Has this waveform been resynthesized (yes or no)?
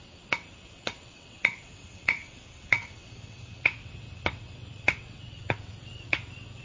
yes